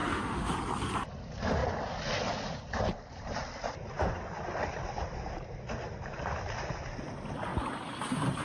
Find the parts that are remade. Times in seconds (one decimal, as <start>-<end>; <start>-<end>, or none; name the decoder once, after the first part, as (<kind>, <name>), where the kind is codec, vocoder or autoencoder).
0.0-0.5 (autoencoder, DAC-VAE)